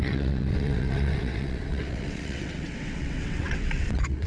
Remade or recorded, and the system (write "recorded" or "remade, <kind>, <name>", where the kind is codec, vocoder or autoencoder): remade, vocoder, WaveNeXt